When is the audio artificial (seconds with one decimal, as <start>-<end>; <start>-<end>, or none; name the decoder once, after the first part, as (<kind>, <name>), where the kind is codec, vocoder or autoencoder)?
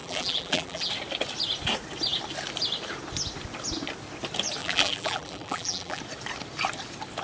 0.0-0.9 (vocoder, BigVGAN v2); 4.6-6.0